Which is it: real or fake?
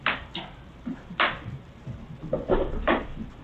fake